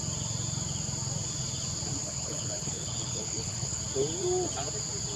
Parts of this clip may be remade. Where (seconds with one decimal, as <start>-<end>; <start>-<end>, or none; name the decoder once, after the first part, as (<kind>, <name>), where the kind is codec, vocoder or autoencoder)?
2.0-3.8 (codec, HILCodec)